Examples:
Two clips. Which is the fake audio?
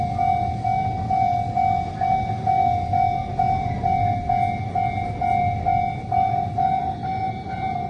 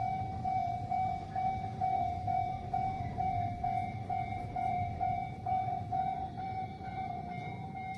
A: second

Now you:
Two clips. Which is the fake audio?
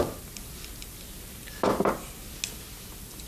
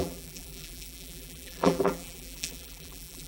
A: second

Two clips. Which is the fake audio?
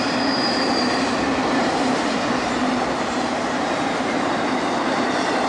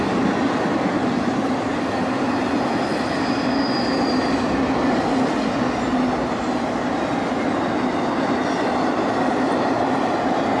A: first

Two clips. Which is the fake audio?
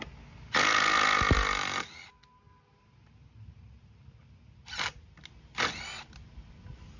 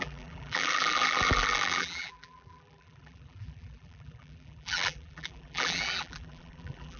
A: second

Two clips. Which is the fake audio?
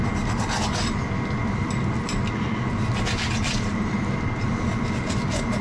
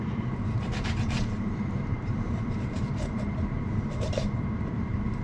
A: second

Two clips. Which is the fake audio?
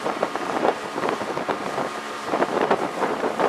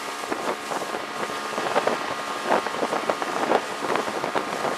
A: first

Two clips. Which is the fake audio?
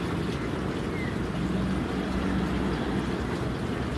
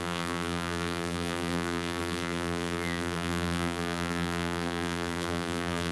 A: second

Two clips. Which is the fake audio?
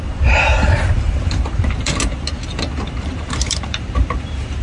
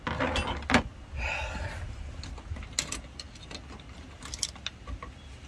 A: first